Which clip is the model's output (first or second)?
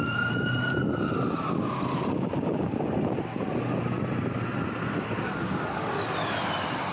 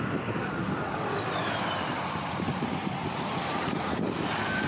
second